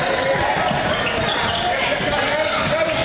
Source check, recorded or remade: recorded